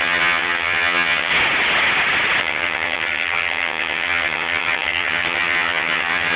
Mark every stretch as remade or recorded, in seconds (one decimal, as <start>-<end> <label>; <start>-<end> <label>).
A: 0.0-1.3 remade; 1.3-2.4 recorded; 2.4-6.4 remade